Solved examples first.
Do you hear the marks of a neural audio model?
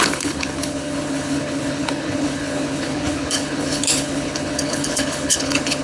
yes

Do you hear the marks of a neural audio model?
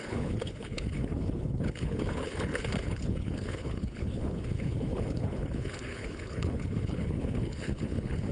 yes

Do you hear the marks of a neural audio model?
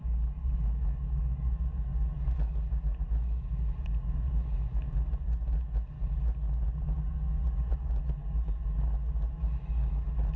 no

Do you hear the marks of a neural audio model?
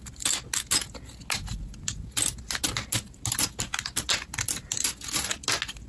no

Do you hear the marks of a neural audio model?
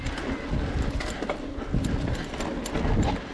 no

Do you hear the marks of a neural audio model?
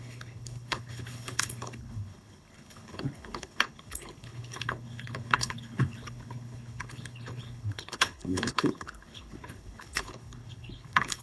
yes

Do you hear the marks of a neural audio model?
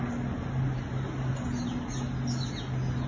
no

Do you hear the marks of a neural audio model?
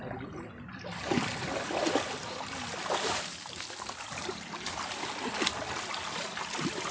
no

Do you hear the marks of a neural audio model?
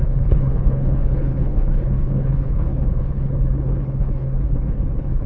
yes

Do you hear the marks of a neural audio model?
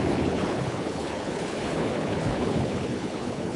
yes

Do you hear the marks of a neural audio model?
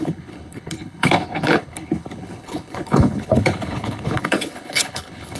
yes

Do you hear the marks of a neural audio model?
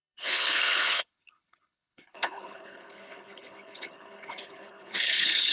yes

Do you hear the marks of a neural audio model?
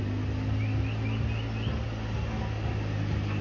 no